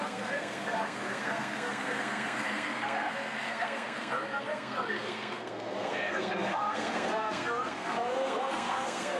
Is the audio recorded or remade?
remade